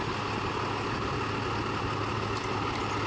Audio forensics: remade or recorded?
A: recorded